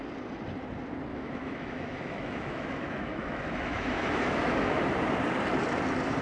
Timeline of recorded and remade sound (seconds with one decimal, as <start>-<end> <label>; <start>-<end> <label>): 0.0-1.1 recorded; 1.1-4.8 remade; 4.8-6.2 recorded